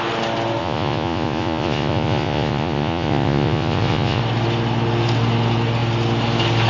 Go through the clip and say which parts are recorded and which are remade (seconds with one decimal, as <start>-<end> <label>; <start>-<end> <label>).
0.0-0.6 recorded; 0.6-4.2 remade; 4.2-6.7 recorded